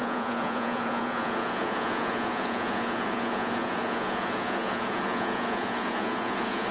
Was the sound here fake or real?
fake